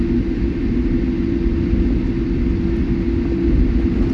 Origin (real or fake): real